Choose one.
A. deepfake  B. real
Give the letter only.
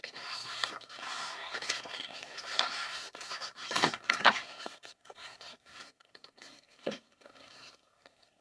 A